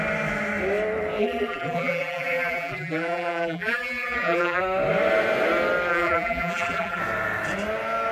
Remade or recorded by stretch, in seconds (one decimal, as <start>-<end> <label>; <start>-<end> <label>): 0.0-1.2 recorded; 1.2-4.6 remade; 4.6-5.9 recorded; 5.9-7.0 remade; 7.0-8.1 recorded